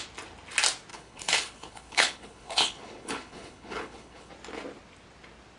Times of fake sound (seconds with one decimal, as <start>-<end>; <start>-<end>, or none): 0.9-4.3